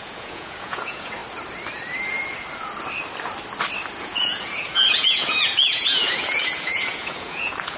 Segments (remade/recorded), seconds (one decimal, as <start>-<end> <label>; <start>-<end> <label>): 0.0-1.2 remade; 1.2-4.0 recorded; 4.0-7.8 remade